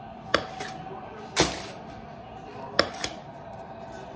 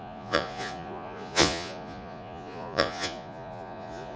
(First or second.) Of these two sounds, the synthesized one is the second